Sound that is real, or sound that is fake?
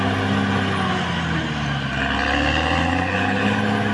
real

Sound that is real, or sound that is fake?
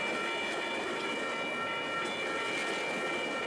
real